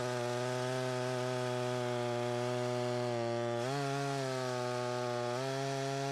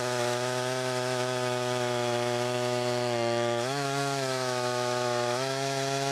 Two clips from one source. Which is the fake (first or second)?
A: second